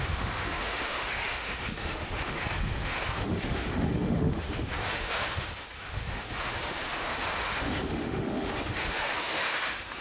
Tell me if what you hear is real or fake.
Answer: fake